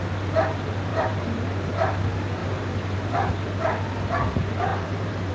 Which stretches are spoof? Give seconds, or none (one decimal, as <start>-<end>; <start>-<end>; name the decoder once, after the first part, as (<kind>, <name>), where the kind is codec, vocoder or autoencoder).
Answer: 0.9-1.7 (vocoder, BigVGAN v2); 2.4-3.3; 4.7-5.3